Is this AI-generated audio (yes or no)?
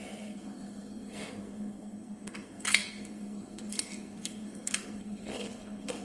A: yes